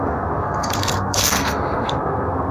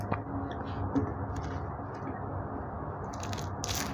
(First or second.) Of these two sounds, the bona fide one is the second